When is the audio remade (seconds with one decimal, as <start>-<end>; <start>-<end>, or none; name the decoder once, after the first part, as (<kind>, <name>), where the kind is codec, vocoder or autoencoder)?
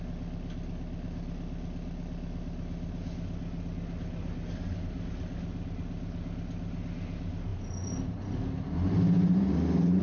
none